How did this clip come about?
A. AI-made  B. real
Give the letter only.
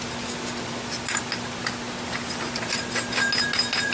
B